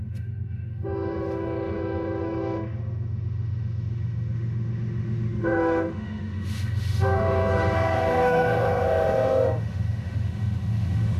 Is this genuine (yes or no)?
no